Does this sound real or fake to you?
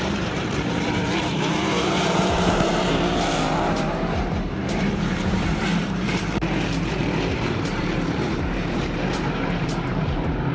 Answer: fake